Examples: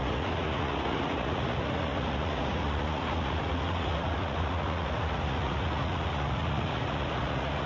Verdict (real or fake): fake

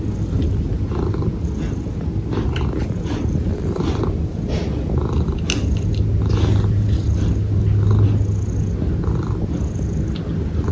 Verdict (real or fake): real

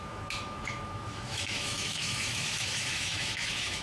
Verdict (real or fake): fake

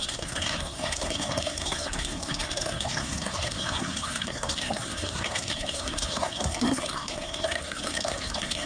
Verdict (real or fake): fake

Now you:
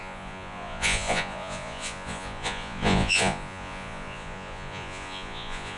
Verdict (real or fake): fake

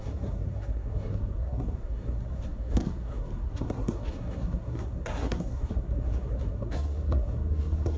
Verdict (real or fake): fake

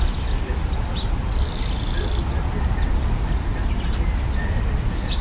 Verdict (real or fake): real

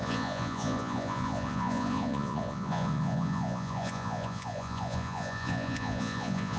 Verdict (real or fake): fake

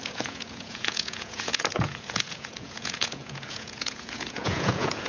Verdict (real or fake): fake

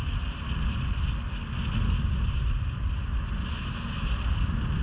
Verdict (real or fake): real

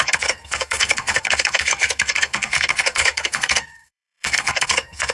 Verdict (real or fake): fake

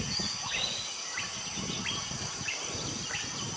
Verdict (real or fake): real